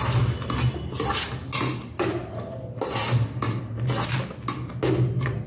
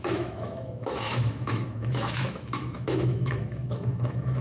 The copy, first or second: second